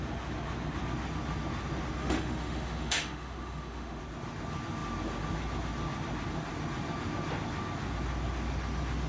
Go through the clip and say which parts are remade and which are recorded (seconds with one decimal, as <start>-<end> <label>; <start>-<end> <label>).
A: 0.0-2.0 recorded; 2.0-4.0 remade; 4.0-9.1 recorded